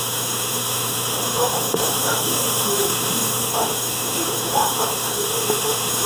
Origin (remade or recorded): remade